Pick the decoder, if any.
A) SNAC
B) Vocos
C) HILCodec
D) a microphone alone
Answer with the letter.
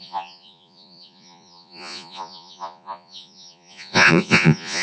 B